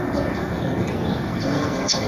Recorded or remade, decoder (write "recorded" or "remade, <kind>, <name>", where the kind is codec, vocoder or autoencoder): remade, codec, SNAC